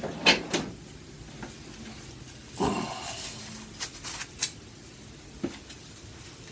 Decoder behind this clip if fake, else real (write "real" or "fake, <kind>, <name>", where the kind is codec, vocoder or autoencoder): real